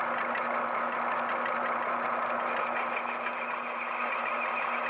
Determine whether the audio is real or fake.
real